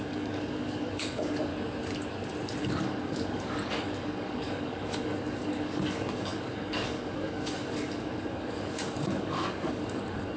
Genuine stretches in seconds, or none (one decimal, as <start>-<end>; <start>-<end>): 1.5-2.6